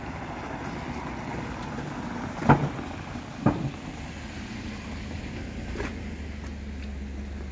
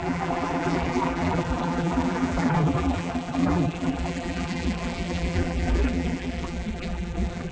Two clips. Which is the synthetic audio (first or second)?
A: second